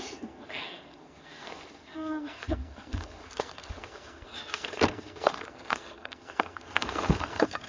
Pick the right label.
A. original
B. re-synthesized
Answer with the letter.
B